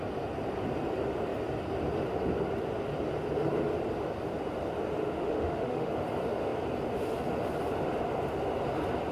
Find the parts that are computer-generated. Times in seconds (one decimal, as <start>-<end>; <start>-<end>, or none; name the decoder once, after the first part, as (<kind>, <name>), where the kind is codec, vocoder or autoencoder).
5.0-5.9 (autoencoder, DAC-VAE)